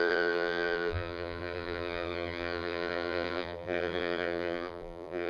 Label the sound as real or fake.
fake